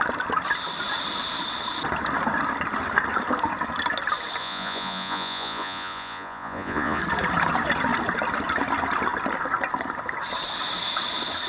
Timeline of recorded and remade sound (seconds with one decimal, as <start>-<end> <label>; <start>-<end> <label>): 0.0-4.4 recorded; 4.4-7.0 remade; 7.0-11.5 recorded